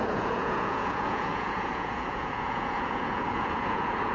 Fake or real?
fake